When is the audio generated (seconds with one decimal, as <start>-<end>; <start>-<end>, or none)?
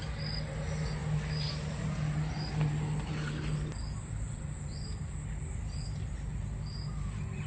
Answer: none